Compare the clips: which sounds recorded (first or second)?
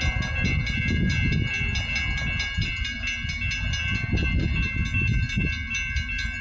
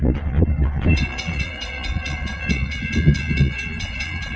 first